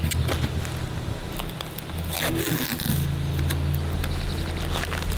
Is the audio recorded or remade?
recorded